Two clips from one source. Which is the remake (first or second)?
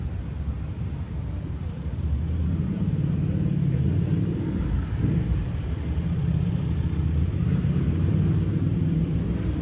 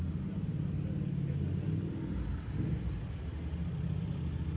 first